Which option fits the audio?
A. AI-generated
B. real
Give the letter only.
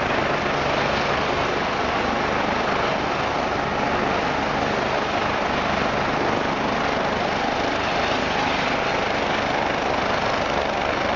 B